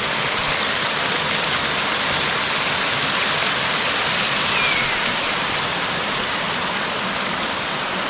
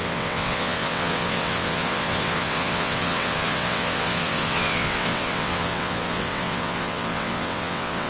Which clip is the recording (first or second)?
first